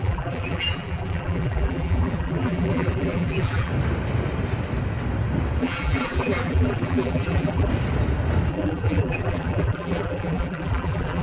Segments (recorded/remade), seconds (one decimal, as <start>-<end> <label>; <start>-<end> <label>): 0.0-3.7 remade; 3.7-5.6 recorded; 5.6-7.7 remade; 7.7-8.5 recorded; 8.5-11.2 remade